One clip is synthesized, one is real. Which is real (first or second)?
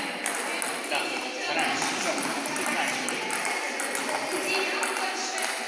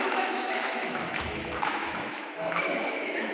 first